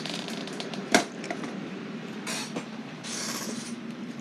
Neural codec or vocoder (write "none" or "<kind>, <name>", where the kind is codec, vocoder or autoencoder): vocoder, BigVGAN v2